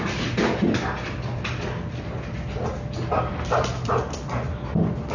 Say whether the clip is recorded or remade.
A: recorded